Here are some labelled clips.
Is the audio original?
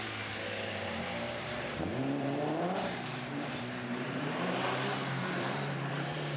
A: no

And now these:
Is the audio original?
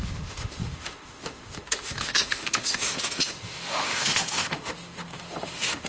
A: no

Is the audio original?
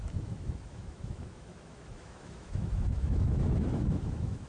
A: no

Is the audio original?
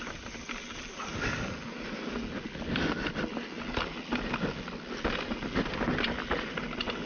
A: yes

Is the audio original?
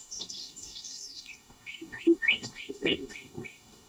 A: no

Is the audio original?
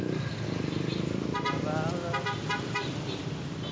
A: yes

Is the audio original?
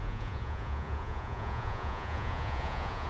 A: no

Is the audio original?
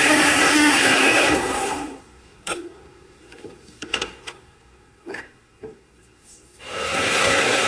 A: no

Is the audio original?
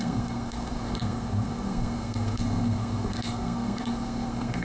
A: no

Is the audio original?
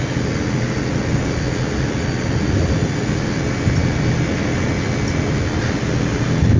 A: yes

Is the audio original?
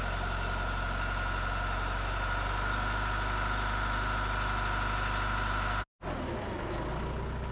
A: yes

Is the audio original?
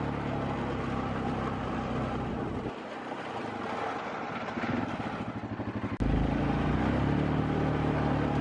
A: yes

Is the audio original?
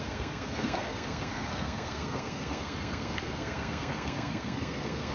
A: no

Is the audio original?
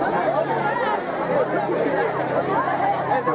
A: yes